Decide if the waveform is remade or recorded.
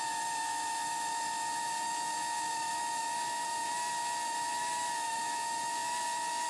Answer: remade